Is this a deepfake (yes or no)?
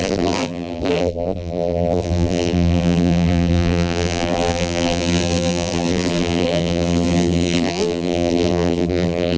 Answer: yes